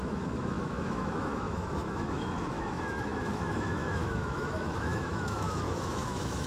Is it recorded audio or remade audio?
remade